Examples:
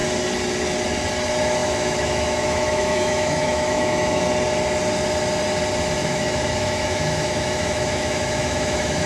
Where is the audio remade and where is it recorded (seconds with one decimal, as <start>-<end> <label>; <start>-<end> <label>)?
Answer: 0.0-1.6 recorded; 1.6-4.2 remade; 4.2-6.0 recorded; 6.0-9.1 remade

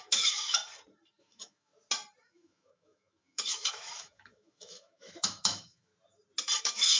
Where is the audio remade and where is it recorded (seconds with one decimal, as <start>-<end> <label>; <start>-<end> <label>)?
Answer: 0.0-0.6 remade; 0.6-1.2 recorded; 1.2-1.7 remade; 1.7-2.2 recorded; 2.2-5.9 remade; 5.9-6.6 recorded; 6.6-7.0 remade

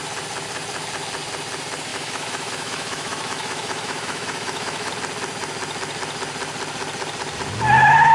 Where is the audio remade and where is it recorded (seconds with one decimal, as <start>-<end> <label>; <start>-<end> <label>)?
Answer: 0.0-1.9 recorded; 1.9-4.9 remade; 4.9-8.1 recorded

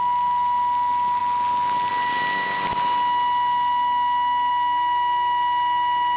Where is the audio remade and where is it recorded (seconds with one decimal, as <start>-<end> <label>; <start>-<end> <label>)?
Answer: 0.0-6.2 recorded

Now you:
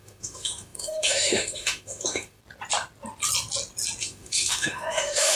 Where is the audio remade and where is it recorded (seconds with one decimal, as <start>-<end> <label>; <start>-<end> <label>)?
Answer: 0.0-2.4 remade; 2.4-4.0 recorded; 4.0-5.4 remade

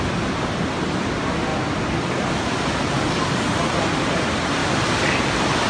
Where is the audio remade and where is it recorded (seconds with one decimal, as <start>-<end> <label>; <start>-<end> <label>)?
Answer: 0.0-5.7 recorded